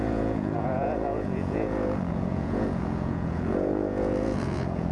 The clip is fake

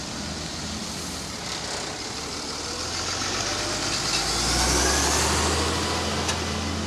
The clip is real